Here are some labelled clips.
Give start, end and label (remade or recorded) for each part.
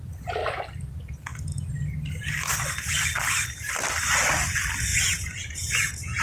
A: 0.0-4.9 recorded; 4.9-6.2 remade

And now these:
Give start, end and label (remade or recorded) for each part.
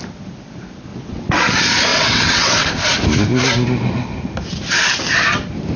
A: 0.0-0.9 recorded; 0.9-1.4 remade; 1.4-1.9 recorded; 1.9-2.7 remade; 2.7-5.8 recorded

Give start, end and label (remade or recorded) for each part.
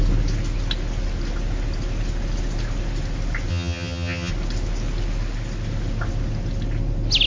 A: 0.0-3.5 recorded; 3.5-4.3 remade; 4.3-7.3 recorded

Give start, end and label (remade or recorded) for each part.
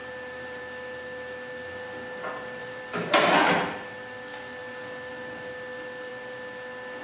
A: 0.0-0.6 remade; 0.6-2.6 recorded; 2.6-3.3 remade; 3.3-7.0 recorded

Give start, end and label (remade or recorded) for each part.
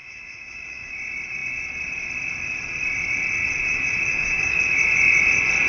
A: 0.0-0.9 remade; 0.9-4.1 recorded; 4.1-4.6 remade; 4.6-5.7 recorded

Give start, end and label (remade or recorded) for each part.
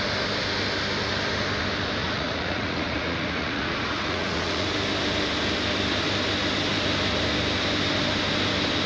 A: 0.0-2.0 recorded; 2.0-4.7 remade; 4.7-8.9 recorded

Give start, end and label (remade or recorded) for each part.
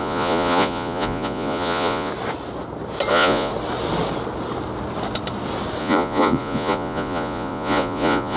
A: 0.0-2.1 remade; 2.1-3.1 recorded; 3.1-3.5 remade; 3.5-5.8 recorded; 5.8-8.4 remade